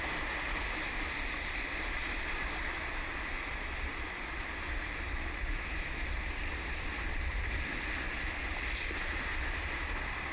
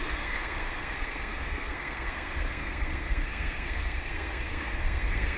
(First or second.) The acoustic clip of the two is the first